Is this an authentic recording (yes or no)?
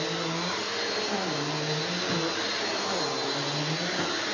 yes